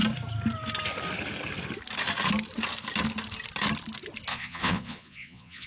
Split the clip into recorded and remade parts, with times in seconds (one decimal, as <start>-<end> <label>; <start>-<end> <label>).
0.0-4.3 recorded; 4.3-5.7 remade